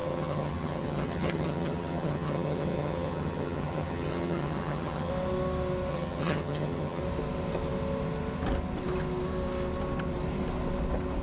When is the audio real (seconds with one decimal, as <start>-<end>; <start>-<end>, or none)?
5.1-5.9; 7.0-11.2